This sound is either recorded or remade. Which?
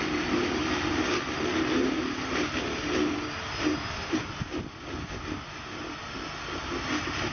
recorded